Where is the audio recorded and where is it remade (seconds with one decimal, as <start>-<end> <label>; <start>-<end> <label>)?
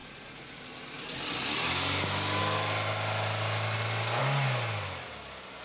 0.0-0.6 remade; 0.6-5.6 recorded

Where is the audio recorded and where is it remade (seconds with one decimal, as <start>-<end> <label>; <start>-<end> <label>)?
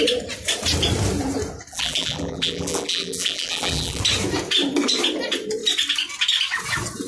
0.0-1.7 recorded; 1.7-4.0 remade; 4.0-7.1 recorded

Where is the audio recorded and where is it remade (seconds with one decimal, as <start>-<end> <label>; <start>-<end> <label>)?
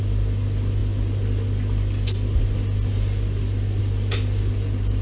0.0-5.0 recorded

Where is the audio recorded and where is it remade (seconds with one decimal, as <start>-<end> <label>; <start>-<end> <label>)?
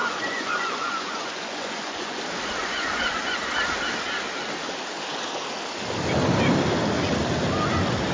0.0-2.2 remade; 2.2-2.6 recorded; 2.6-3.4 remade; 3.4-8.1 recorded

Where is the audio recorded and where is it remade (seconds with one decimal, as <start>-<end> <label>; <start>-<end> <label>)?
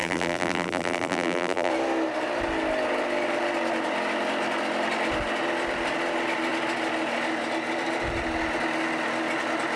0.0-1.7 remade; 1.7-9.8 recorded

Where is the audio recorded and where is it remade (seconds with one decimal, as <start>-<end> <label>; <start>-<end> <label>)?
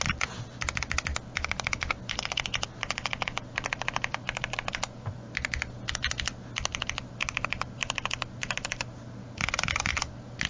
0.0-10.5 recorded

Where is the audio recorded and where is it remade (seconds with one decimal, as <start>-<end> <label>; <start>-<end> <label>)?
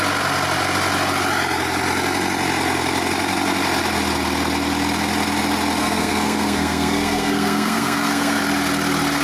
0.0-5.8 recorded; 5.8-8.4 remade; 8.4-9.2 recorded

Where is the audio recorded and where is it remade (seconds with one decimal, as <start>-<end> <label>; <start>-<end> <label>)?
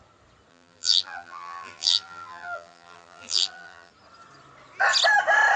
0.0-0.5 recorded; 0.5-3.9 remade; 3.9-5.6 recorded